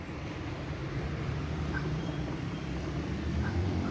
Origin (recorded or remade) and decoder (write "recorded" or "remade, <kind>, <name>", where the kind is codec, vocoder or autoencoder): remade, vocoder, BigVGAN v2